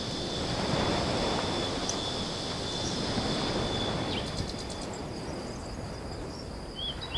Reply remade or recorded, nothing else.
recorded